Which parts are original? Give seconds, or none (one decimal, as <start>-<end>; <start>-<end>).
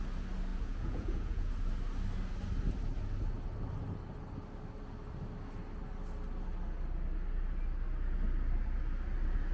0.0-0.5; 1.5-9.5